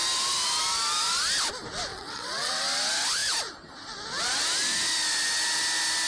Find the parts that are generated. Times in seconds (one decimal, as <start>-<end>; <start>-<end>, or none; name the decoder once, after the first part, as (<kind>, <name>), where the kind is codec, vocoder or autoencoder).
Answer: 1.9-2.5 (vocoder, WaveNeXt)